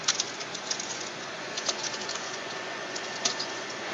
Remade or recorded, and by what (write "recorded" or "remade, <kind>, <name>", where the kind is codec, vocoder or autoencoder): remade, vocoder, Vocos